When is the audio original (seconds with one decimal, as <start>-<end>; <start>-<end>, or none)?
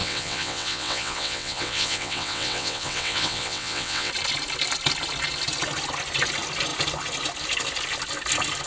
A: 4.1-8.7